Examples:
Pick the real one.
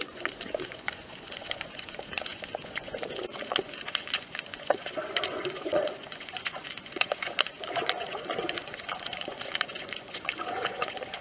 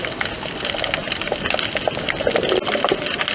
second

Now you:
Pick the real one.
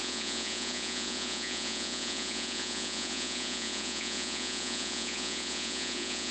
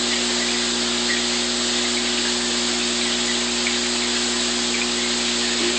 second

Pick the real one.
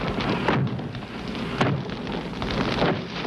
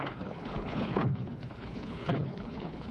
first